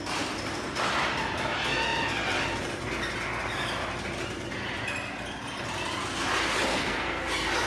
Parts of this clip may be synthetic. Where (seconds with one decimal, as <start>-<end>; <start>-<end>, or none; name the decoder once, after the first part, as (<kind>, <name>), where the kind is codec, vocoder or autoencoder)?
6.7-7.3 (codec, SNAC)